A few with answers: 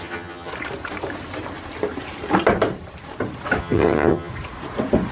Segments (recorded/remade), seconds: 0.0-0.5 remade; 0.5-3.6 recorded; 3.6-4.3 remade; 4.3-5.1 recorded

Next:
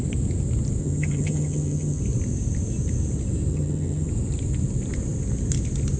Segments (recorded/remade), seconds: 0.0-0.8 recorded; 0.8-2.0 remade; 2.0-3.5 recorded; 3.5-4.1 remade; 4.1-6.0 recorded

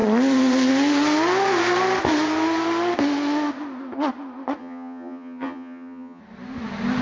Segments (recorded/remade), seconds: 0.0-4.6 recorded; 4.6-6.2 remade; 6.2-7.0 recorded

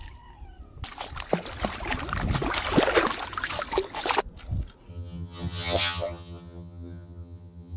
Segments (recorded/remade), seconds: 0.0-4.9 recorded; 4.9-7.8 remade

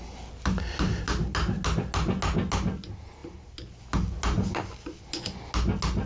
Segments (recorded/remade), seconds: 0.0-6.1 recorded

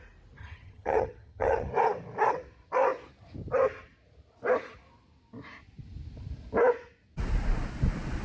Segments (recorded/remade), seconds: 0.0-0.4 recorded; 0.4-1.7 remade; 1.7-8.2 recorded